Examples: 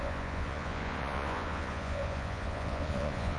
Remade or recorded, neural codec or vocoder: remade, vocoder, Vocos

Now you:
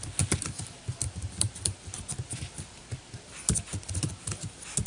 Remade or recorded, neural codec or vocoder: recorded